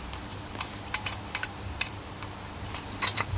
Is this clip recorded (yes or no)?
no